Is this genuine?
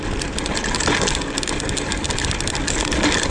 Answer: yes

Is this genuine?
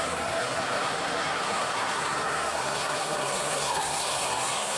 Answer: no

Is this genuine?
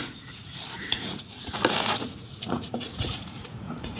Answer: no